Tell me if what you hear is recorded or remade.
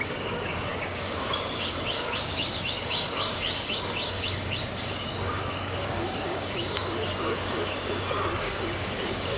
remade